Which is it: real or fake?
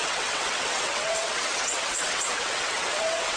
fake